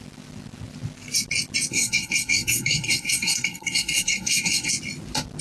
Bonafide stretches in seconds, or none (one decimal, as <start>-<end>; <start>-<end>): 0.0-1.7; 4.7-5.4